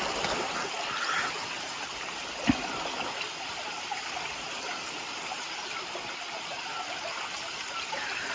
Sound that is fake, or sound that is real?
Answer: real